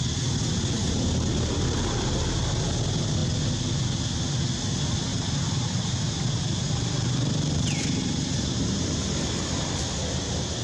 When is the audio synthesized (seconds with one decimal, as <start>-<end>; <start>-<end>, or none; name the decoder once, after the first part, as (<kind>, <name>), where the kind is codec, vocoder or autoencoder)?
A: 0.8-2.1 (vocoder, BigVGAN v2); 5.1-9.1